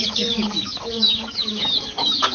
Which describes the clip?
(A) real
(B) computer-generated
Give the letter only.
B